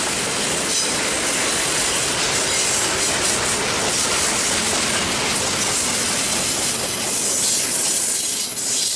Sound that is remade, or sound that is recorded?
recorded